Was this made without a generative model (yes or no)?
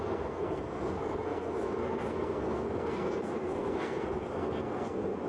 no